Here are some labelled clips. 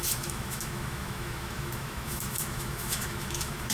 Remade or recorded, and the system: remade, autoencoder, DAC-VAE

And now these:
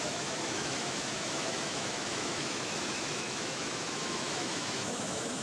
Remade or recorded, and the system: remade, autoencoder, DAC-VAE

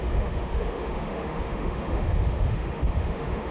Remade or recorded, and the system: remade, autoencoder, DAC-VAE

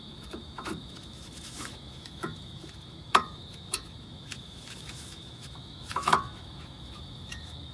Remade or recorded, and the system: remade, autoencoder, DAC-VAE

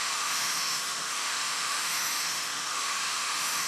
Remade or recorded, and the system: remade, autoencoder, DAC-VAE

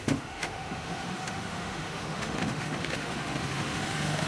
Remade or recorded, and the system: remade, autoencoder, DAC-VAE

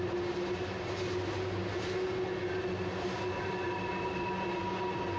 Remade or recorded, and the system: recorded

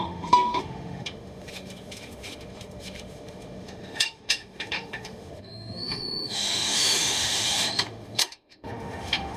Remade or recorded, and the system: remade, autoencoder, DAC-VAE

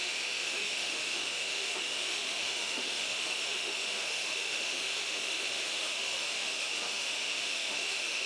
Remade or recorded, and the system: remade, autoencoder, DAC-VAE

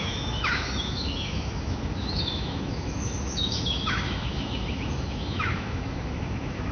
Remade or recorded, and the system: remade, autoencoder, DAC-VAE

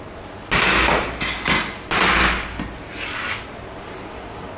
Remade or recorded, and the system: recorded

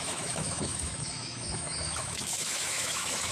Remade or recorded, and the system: remade, autoencoder, DAC-VAE